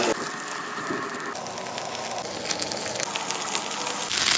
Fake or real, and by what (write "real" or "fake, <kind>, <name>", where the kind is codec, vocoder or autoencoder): real